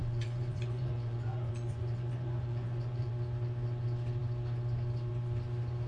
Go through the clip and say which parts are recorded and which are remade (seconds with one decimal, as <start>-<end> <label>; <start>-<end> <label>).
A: 0.0-3.1 remade; 3.1-5.9 recorded